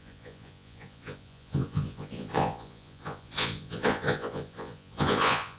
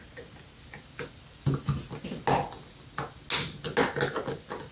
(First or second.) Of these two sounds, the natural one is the second